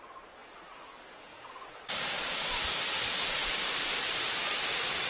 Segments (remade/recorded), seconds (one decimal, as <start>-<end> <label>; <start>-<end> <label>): 0.0-1.3 recorded; 1.3-4.4 remade; 4.4-5.1 recorded